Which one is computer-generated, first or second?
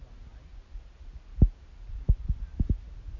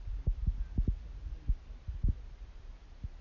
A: first